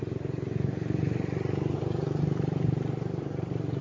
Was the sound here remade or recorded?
recorded